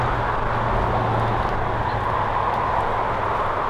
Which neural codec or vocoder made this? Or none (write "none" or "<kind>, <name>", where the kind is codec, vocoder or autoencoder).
none